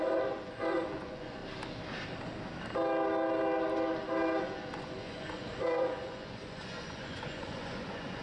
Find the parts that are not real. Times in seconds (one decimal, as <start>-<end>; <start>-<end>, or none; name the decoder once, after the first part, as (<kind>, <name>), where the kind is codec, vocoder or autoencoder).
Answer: 0.0-1.4 (vocoder, Vocos); 4.4-8.2